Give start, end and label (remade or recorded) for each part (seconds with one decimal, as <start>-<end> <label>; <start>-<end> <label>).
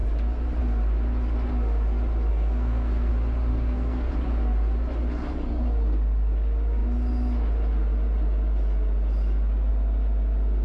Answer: 0.0-2.3 recorded; 2.3-3.1 remade; 3.1-3.5 recorded; 3.5-4.1 remade; 4.1-10.6 recorded